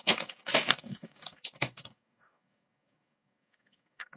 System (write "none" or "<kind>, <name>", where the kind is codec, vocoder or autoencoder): codec, DAC